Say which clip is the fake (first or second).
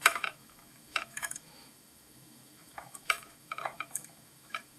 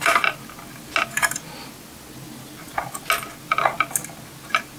first